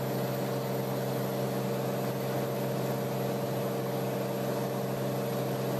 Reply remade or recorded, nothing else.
recorded